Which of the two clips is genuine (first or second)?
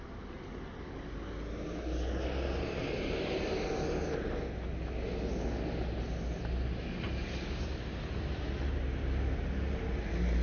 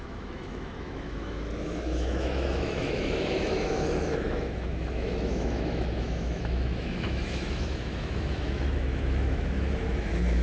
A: first